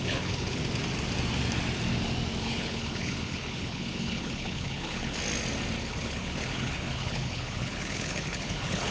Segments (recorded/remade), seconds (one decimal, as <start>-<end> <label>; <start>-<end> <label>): 0.0-0.6 remade; 0.6-2.4 recorded; 2.4-5.2 remade; 5.2-5.8 recorded; 5.8-8.9 remade